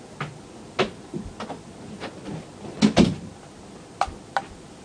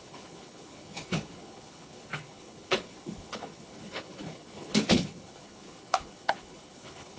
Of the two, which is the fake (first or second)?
second